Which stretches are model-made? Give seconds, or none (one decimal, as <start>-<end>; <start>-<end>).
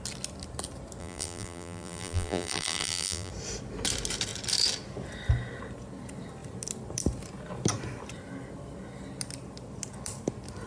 1.0-3.3